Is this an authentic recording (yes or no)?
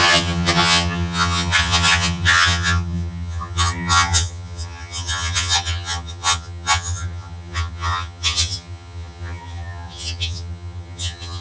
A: no